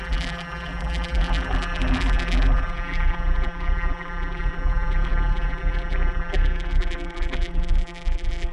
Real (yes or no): no